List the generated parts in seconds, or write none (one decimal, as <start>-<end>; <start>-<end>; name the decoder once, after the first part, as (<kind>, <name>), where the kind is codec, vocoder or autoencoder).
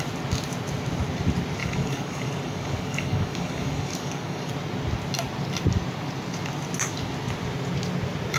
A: 1.6-4.5 (codec, DAC)